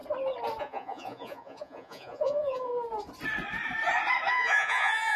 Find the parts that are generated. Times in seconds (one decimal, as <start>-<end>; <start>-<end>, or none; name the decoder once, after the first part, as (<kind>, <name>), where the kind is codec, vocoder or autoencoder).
0.6-2.7 (vocoder, Vocos); 4.3-5.2